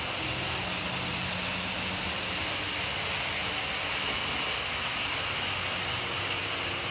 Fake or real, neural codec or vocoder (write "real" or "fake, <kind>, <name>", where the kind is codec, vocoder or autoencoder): real